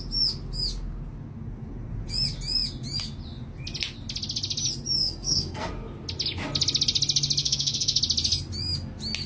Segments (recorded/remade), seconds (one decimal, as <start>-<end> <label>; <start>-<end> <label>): 0.0-5.0 recorded; 5.0-5.7 remade; 5.7-7.4 recorded; 7.4-8.0 remade; 8.0-9.3 recorded